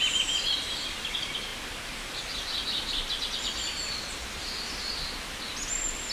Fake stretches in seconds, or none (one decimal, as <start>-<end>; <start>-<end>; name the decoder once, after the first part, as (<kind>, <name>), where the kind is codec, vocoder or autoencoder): none